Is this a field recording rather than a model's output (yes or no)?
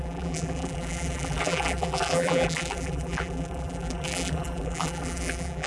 no